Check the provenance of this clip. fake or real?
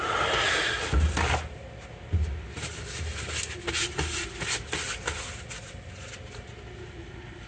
real